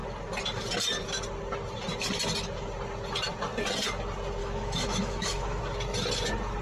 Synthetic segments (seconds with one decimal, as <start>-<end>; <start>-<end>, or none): 4.4-5.6